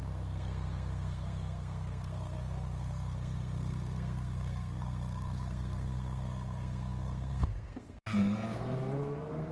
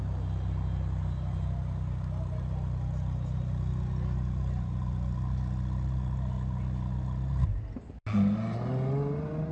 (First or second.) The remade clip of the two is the first